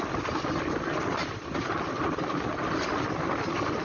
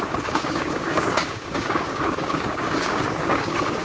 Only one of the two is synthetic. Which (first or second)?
second